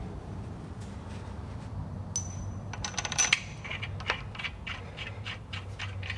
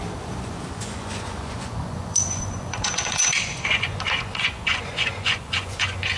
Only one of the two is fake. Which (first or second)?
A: second